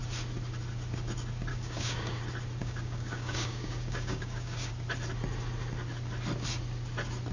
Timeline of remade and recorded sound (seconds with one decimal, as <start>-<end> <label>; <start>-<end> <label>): 0.0-1.5 recorded; 1.5-2.2 remade; 2.2-2.6 recorded; 2.6-4.7 remade; 4.7-7.3 recorded